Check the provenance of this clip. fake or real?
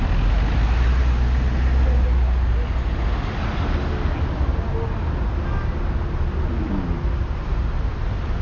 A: real